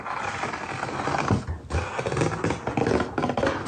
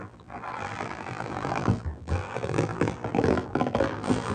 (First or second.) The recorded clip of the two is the first